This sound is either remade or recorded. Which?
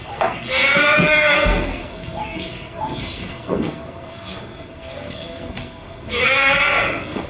remade